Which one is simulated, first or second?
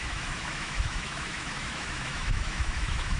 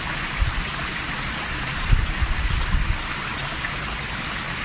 first